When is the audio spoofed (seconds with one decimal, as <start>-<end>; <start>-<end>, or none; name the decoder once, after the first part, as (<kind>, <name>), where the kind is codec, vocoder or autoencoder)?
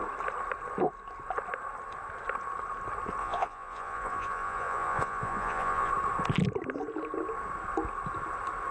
3.2-5.9 (vocoder, Vocos)